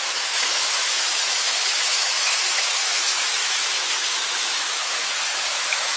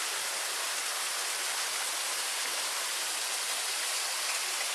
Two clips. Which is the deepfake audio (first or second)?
first